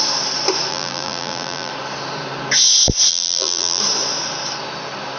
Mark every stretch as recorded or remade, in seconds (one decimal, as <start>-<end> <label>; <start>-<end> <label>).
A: 0.0-0.7 recorded; 0.7-1.7 remade; 1.7-3.1 recorded; 3.1-3.8 remade; 3.8-5.2 recorded